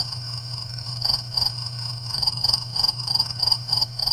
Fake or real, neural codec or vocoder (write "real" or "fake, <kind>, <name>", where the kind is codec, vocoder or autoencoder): fake, autoencoder, DAC-VAE